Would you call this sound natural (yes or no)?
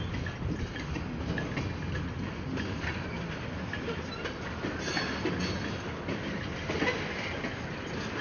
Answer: yes